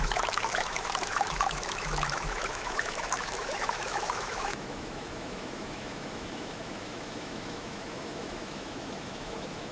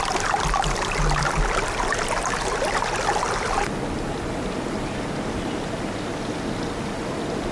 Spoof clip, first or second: first